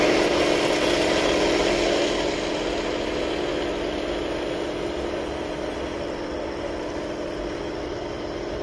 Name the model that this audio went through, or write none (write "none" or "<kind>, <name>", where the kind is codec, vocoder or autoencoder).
none